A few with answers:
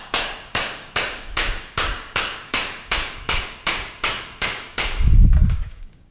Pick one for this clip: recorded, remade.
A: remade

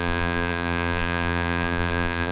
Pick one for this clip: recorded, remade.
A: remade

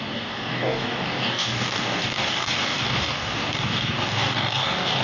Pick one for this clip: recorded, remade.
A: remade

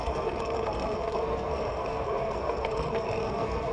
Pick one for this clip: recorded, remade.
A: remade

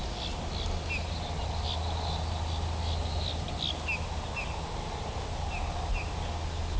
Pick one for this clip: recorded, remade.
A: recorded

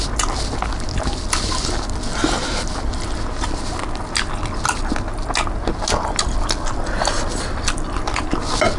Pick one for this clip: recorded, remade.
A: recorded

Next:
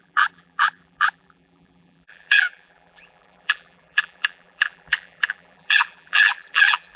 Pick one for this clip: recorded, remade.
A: remade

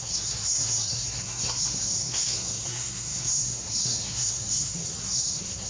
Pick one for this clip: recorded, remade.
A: remade